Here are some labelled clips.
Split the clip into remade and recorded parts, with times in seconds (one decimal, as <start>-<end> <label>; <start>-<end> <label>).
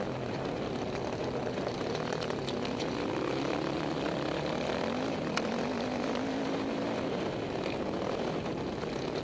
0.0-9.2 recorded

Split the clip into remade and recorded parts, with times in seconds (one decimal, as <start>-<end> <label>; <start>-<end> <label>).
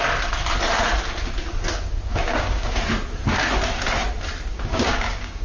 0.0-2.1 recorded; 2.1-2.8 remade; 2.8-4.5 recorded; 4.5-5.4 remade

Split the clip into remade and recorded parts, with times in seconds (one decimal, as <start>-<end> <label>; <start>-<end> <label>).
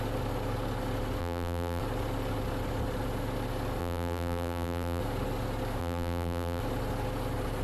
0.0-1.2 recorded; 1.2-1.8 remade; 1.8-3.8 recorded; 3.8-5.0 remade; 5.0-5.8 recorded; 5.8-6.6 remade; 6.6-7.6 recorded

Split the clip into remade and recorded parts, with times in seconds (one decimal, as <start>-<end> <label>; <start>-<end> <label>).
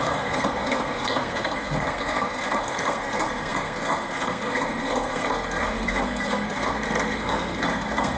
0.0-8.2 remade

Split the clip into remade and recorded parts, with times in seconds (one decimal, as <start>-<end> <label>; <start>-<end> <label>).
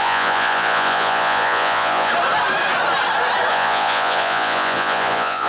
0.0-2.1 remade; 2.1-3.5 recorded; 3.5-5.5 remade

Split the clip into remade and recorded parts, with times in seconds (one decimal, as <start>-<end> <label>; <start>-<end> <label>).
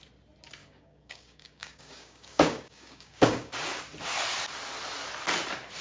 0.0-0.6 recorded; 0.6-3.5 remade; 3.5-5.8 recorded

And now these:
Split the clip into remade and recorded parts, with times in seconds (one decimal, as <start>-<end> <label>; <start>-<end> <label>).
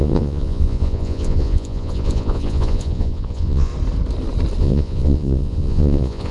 0.0-3.7 remade; 3.7-4.6 recorded; 4.6-6.3 remade